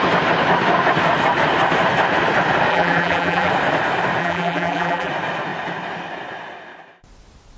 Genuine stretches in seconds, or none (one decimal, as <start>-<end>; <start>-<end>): 0.0-2.7; 3.5-4.2; 5.1-7.6